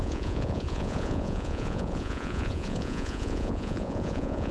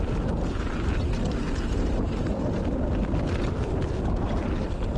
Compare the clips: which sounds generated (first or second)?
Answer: first